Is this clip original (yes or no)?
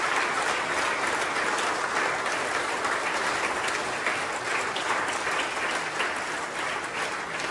yes